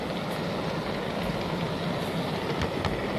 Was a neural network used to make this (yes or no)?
no